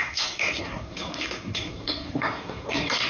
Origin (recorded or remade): remade